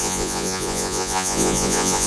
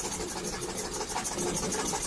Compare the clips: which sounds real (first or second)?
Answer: second